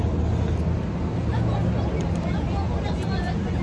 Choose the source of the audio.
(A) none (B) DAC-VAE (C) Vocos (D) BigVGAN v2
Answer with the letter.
A